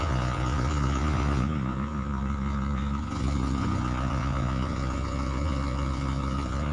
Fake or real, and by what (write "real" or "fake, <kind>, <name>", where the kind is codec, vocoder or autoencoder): fake, vocoder, Vocos